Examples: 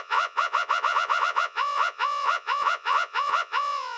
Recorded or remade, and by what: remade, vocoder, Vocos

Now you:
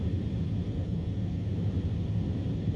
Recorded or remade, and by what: recorded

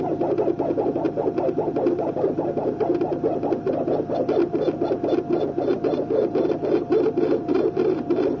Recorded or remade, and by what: recorded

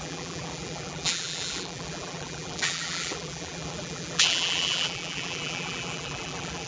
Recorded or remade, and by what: remade, vocoder, BigVGAN v2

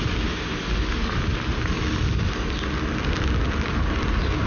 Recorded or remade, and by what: recorded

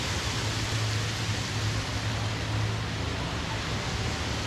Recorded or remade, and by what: recorded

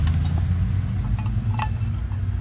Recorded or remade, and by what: recorded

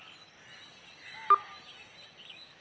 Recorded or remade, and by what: recorded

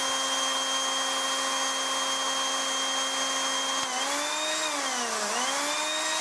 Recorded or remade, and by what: recorded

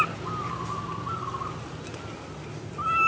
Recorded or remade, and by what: recorded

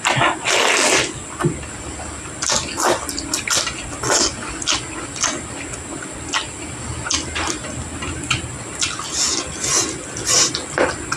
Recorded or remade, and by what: recorded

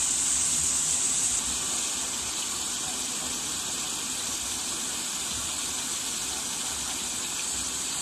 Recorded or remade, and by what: recorded